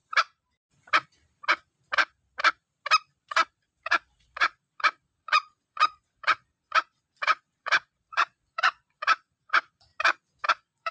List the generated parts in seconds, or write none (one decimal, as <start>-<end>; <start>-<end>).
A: 3.3-9.9; 10.5-10.9